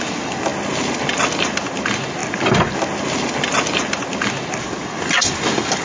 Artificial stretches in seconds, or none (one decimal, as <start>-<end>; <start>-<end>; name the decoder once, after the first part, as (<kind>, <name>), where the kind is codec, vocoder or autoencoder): none